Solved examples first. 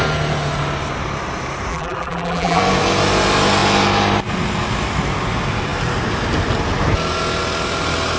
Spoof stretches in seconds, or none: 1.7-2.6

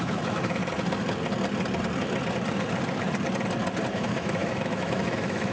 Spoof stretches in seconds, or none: 0.0-0.6; 3.9-5.5

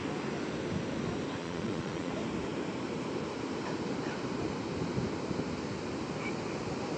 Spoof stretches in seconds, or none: 1.4-2.1

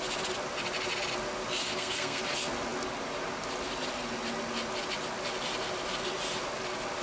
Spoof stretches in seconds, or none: 1.6-2.2